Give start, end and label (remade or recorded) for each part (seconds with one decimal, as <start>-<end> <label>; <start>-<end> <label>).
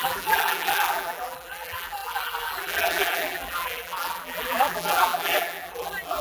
0.0-6.2 remade